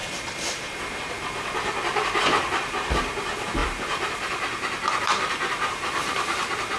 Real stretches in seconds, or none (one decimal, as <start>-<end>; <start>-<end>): none